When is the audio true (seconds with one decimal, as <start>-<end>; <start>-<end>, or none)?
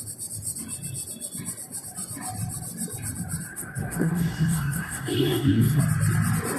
0.0-3.5; 5.8-6.6